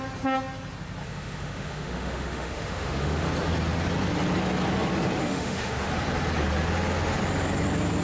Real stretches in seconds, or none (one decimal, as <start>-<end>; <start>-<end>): 0.0-1.0; 3.3-5.2; 5.9-8.0